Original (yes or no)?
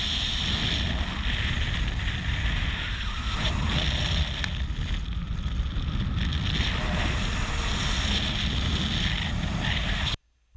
yes